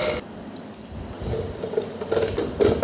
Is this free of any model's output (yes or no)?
no